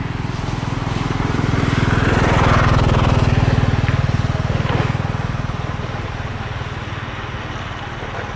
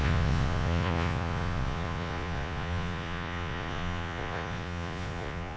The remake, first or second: second